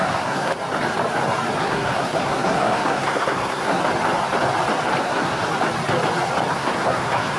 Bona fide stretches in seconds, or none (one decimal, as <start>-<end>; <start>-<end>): 0.5-1.6; 3.8-5.0; 5.4-6.5

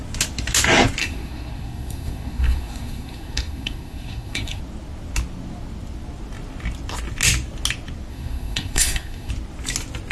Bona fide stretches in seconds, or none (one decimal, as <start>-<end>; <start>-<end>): 0.0-1.0; 4.6-8.1; 9.3-10.1